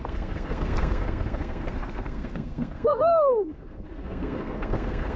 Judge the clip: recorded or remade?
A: remade